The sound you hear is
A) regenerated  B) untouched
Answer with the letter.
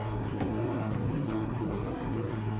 A